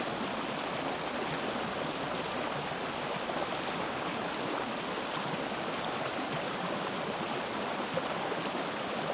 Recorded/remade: recorded